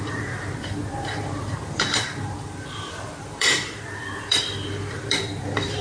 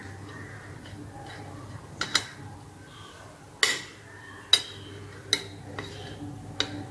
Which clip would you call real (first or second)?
second